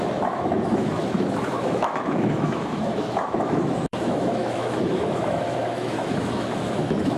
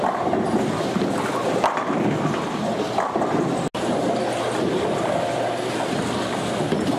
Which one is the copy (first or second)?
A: first